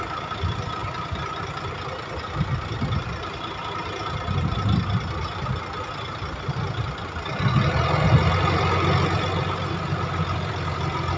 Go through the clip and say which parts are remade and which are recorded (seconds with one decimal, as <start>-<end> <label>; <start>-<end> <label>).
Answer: 0.0-11.2 recorded